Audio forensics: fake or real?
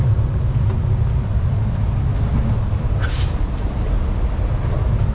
real